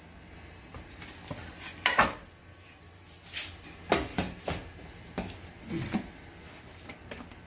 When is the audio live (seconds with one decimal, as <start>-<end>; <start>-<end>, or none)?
0.0-7.5